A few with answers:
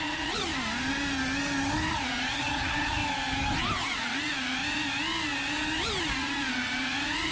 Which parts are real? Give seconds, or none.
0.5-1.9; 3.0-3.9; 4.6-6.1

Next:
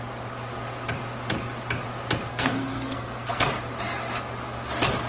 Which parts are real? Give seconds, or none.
0.0-2.3; 3.5-5.1